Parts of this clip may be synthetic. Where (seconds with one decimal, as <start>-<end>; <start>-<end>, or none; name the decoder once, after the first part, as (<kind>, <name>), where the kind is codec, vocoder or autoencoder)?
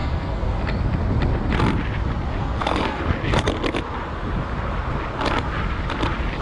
0.0-0.6 (codec, SNAC); 2.4-3.0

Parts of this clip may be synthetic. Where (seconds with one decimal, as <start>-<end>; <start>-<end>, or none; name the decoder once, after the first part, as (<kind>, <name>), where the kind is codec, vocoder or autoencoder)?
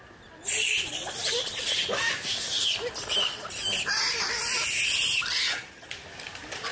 5.3-5.9 (vocoder, HiFi-GAN)